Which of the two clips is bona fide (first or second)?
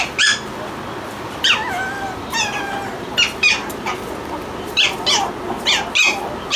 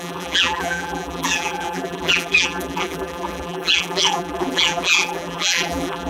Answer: first